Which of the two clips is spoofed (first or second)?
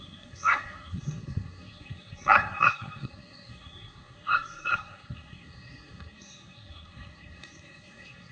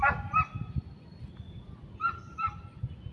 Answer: first